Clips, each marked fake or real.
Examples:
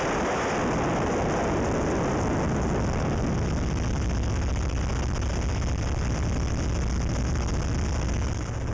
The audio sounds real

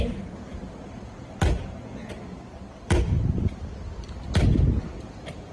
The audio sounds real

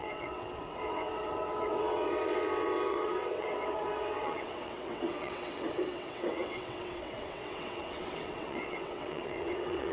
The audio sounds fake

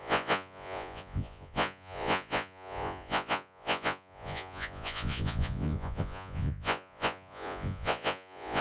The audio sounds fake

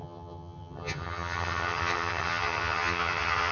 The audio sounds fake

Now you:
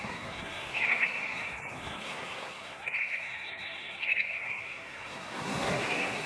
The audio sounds fake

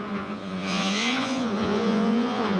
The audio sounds fake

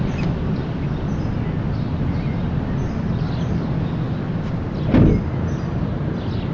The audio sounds real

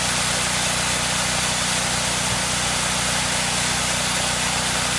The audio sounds real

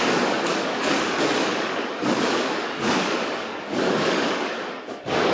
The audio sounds fake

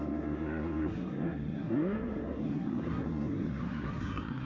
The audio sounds fake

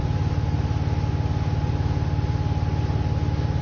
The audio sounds real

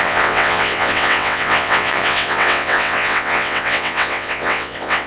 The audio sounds fake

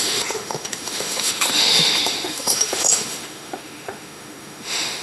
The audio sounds fake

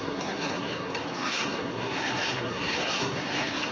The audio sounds fake